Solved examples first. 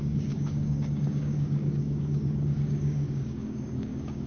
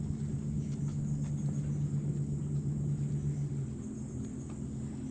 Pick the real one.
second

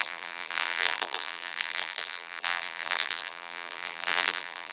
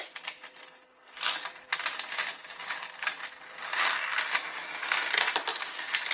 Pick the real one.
second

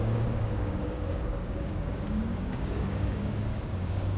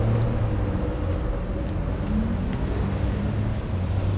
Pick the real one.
second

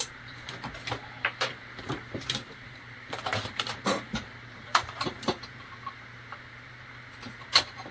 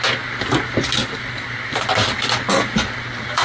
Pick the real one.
second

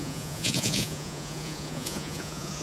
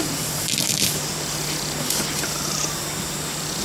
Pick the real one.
second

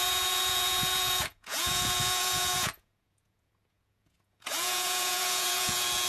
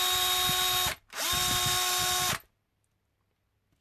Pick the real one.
second